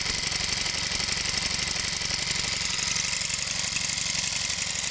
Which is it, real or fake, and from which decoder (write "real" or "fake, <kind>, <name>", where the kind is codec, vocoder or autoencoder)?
real